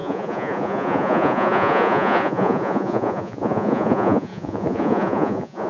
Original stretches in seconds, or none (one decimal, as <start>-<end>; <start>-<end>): none